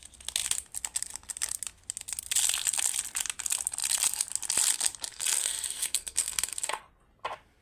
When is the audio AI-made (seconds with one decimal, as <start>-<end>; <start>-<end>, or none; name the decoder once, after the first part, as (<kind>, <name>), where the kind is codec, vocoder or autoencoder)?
5.1-6.8 (codec, SNAC)